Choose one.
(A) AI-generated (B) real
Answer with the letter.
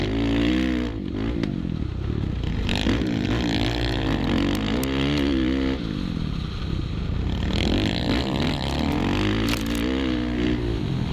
B